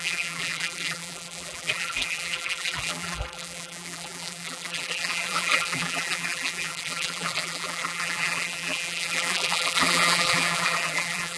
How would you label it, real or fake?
fake